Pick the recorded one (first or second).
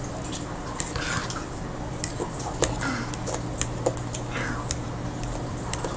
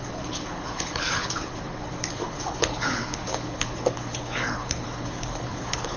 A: first